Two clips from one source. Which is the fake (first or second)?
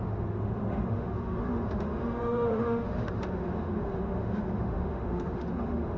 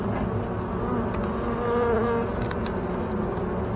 first